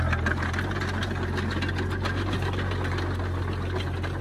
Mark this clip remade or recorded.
recorded